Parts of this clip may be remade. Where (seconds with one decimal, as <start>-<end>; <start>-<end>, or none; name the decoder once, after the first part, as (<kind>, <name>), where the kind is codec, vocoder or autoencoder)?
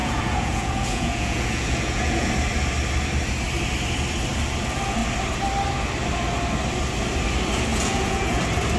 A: 0.0-2.3 (vocoder, Vocos); 7.7-8.4